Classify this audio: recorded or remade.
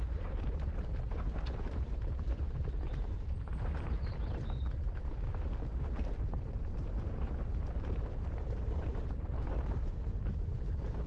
remade